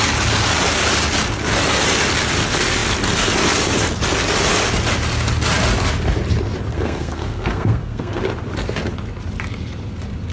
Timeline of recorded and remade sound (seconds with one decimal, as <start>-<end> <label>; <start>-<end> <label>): 0.0-6.7 recorded; 6.7-8.2 remade; 8.2-10.3 recorded